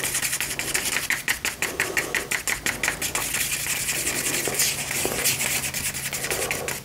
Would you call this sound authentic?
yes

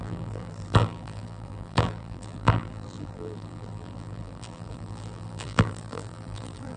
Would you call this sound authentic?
no